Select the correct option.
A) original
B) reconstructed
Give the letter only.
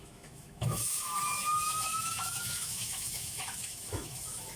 B